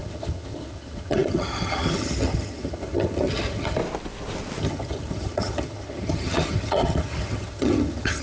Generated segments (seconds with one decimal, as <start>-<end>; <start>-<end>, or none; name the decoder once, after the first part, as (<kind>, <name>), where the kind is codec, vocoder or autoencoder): 0.0-3.8 (vocoder, HiFi-GAN); 4.6-8.2